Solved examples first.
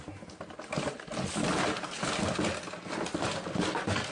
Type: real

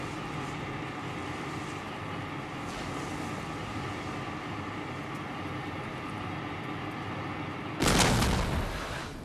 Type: real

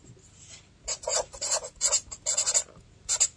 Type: real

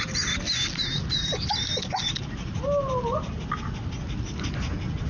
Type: real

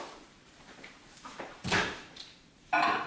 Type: fake